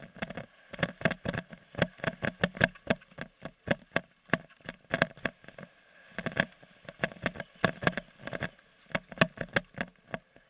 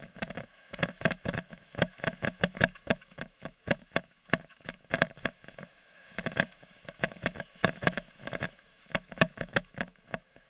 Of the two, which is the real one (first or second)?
first